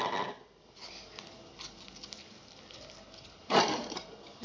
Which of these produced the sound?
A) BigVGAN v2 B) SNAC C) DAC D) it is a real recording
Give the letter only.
D